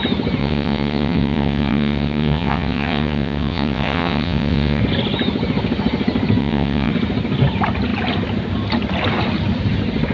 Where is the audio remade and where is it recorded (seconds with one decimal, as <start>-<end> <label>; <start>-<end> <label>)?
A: 0.0-0.4 recorded; 0.4-4.8 remade; 4.8-6.4 recorded; 6.4-6.9 remade; 6.9-10.1 recorded